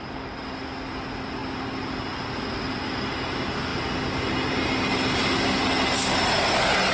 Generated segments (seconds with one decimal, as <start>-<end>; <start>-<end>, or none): none